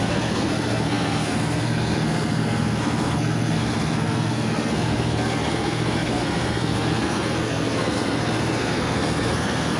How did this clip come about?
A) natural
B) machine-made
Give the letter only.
B